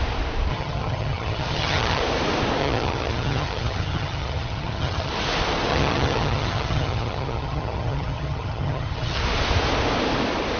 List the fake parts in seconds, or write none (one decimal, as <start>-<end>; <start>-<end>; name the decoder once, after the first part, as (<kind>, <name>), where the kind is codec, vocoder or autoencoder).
0.5-2.0 (vocoder, HiFi-GAN); 2.6-5.1; 5.7-9.2

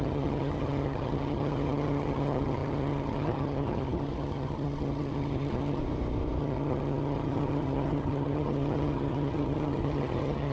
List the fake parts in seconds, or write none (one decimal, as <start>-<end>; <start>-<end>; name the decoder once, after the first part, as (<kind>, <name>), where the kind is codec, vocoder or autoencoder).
0.0-5.8 (vocoder, HiFi-GAN); 6.4-10.5

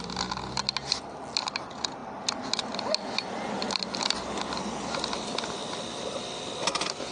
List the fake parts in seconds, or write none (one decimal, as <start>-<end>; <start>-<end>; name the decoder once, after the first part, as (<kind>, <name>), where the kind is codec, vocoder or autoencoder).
5.6-6.4 (vocoder, BigVGAN v2)